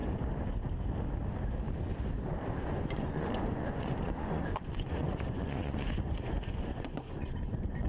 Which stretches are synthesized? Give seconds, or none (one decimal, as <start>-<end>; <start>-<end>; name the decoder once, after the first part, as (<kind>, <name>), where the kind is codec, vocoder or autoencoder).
2.6-7.9 (vocoder, Vocos)